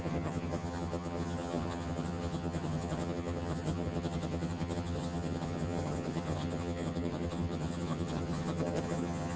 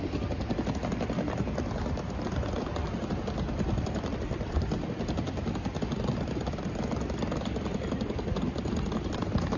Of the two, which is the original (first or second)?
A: second